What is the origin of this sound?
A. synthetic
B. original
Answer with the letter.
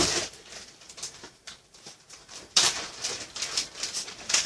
A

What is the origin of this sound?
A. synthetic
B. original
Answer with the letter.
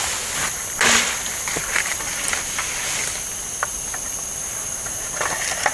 B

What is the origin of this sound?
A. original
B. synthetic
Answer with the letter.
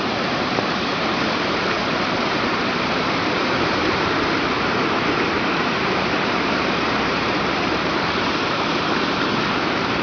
B